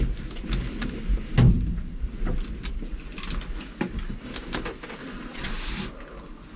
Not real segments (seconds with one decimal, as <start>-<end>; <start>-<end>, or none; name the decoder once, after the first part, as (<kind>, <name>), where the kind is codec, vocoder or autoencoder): 5.0-5.5 (vocoder, Vocos)